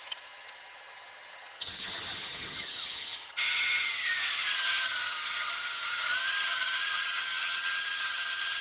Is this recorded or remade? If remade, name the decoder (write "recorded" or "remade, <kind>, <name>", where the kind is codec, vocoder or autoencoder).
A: remade, vocoder, HiFi-GAN